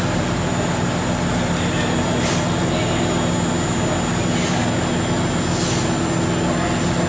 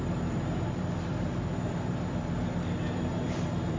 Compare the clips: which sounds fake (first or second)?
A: second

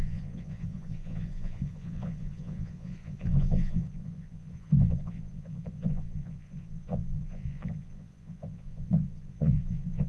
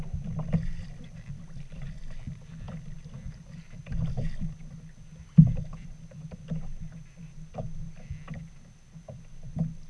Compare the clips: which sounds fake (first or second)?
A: first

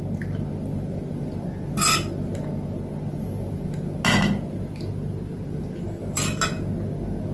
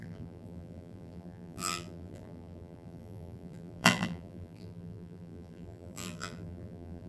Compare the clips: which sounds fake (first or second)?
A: second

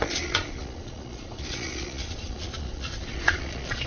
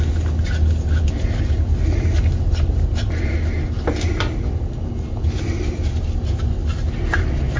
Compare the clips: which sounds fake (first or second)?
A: first